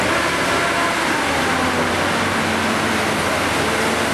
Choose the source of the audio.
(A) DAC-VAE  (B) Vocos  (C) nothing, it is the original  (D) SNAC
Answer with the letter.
C